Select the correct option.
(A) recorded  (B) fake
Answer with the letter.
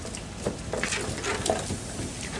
A